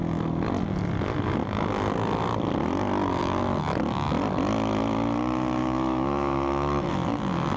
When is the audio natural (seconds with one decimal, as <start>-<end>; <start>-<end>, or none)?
0.0-5.6; 6.9-7.6